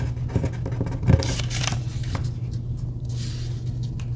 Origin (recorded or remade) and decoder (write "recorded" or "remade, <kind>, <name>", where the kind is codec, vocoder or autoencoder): recorded